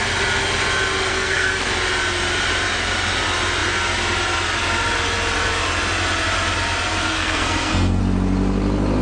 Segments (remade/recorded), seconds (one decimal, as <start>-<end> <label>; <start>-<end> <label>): 0.0-1.1 recorded; 1.1-1.7 remade; 1.7-7.0 recorded; 7.0-8.0 remade; 8.0-9.0 recorded